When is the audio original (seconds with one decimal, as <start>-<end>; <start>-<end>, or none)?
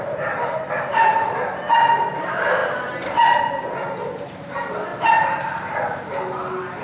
0.0-2.6; 3.4-4.9; 6.1-6.8